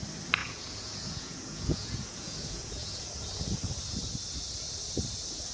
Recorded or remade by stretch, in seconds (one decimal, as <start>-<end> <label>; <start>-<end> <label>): 0.0-0.4 recorded; 0.4-2.8 remade; 2.8-5.5 recorded